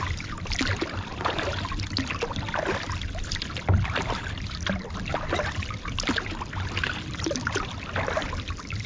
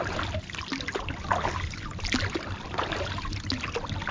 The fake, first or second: first